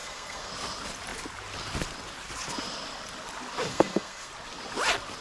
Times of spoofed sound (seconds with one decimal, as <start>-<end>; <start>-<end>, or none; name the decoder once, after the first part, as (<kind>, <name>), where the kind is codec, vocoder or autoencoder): 0.0-0.5 (codec, SNAC); 3.7-4.3